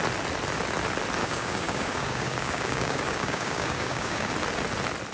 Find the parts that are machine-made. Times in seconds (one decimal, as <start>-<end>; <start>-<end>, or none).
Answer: 1.2-4.3